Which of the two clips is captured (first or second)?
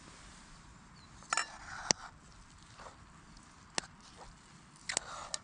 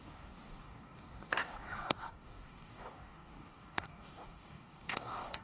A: first